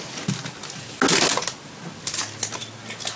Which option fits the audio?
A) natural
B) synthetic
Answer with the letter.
A